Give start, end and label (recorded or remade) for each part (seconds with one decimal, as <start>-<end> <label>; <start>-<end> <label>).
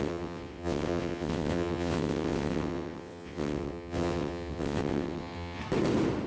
0.0-5.6 remade; 5.6-6.3 recorded